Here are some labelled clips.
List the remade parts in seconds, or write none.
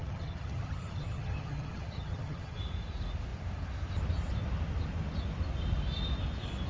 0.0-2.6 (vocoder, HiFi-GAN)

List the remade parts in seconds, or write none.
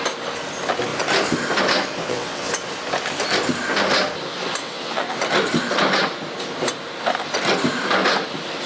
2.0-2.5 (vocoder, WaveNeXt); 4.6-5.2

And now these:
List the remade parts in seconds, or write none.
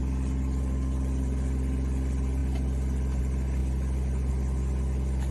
none